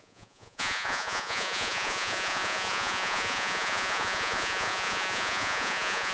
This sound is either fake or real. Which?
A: fake